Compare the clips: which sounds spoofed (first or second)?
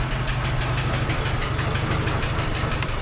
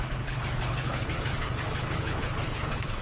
second